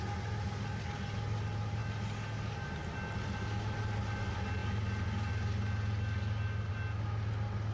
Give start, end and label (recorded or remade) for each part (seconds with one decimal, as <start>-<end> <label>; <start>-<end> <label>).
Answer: 0.0-7.7 recorded